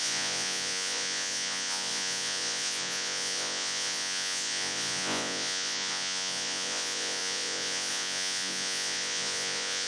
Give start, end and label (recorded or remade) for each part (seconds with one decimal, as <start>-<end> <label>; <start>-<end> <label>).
0.0-9.9 remade